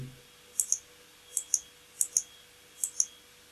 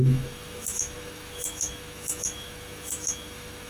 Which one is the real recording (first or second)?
first